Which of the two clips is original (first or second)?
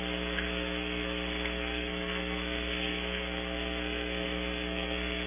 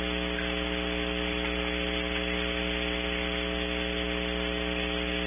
second